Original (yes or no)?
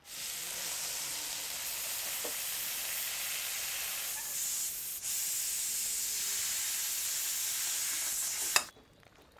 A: yes